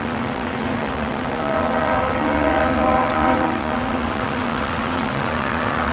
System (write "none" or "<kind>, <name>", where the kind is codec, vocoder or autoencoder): vocoder, WaveNeXt